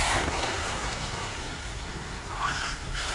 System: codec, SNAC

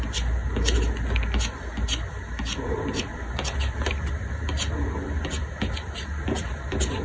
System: none